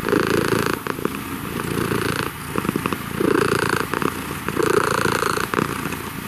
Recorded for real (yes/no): yes